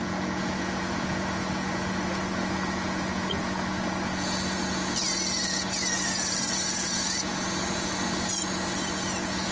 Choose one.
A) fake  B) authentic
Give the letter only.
A